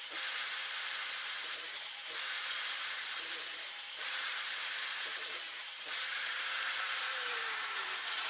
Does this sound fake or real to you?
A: fake